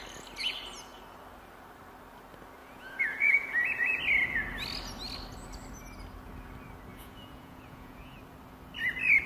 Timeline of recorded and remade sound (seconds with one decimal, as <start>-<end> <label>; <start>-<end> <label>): 0.0-2.6 recorded; 2.6-4.0 remade; 4.0-6.9 recorded; 6.9-8.2 remade; 8.2-9.3 recorded